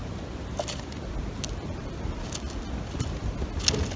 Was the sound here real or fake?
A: real